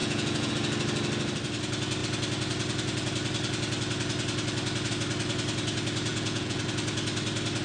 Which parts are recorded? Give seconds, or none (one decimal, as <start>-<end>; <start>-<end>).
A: 0.5-6.1; 6.6-7.6